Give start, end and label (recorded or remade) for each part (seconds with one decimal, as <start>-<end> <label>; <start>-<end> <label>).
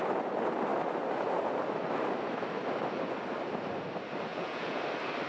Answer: 0.0-4.3 recorded; 4.3-4.8 remade; 4.8-5.3 recorded